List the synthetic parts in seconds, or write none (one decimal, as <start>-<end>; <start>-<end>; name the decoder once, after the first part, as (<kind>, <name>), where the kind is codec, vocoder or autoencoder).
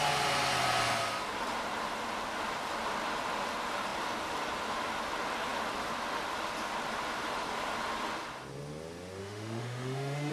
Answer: 9.2-10.3 (autoencoder, DAC-VAE)